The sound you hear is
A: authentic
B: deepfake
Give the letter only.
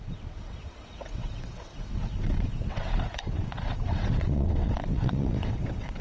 B